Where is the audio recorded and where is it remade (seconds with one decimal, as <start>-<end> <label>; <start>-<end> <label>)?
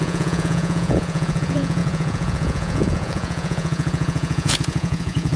0.0-5.4 remade